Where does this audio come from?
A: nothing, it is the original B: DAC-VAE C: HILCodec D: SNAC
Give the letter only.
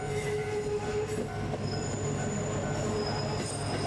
A